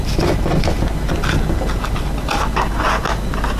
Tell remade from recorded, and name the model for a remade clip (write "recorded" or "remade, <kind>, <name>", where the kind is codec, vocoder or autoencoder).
recorded